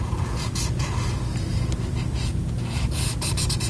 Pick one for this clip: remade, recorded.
recorded